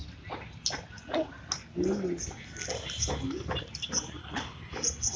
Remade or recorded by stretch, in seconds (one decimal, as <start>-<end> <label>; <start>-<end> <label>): 0.0-4.2 recorded; 4.2-4.7 remade; 4.7-5.2 recorded